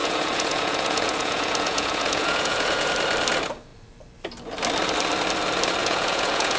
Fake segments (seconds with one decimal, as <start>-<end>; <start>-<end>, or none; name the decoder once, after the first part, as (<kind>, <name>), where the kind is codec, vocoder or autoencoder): 0.0-2.9 (vocoder, Vocos); 5.8-6.6